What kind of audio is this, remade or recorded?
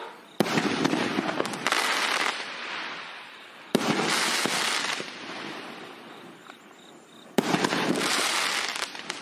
remade